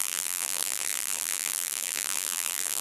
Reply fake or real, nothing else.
fake